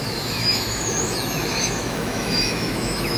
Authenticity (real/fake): fake